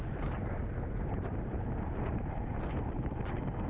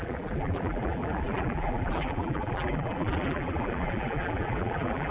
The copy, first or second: second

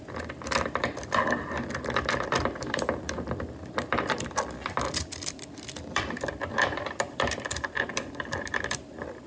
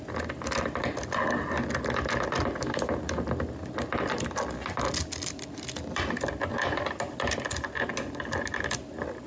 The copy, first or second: first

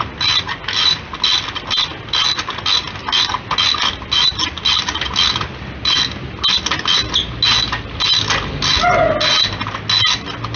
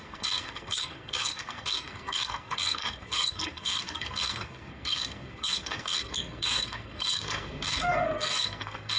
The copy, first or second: second